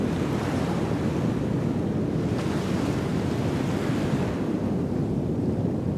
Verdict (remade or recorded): recorded